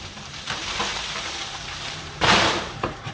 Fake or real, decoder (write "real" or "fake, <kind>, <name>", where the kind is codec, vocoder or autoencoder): fake, vocoder, BigVGAN v2